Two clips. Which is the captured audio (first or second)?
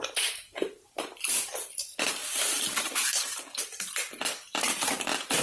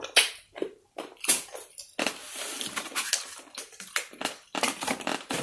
second